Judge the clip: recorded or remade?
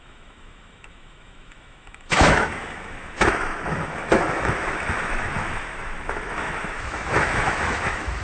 remade